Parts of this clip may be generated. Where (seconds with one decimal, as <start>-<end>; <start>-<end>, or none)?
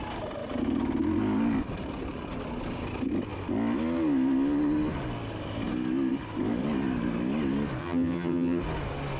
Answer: 7.8-8.6